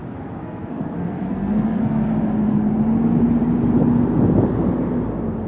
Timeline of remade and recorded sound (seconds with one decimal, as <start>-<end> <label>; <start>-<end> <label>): 0.0-2.1 remade; 2.1-5.5 recorded